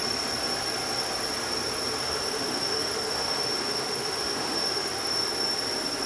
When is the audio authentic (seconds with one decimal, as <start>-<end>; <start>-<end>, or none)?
0.0-2.0; 4.9-6.1